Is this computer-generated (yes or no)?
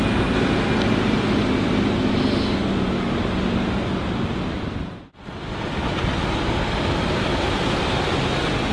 no